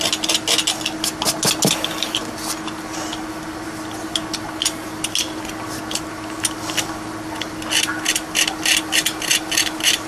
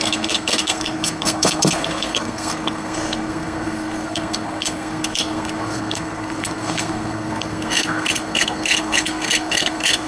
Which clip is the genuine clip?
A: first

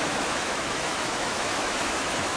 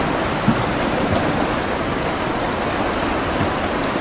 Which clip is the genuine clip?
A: second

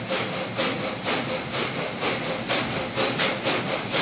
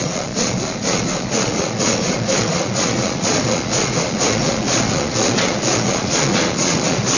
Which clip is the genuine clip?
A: first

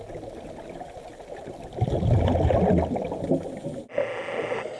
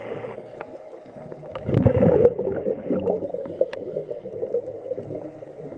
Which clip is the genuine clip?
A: first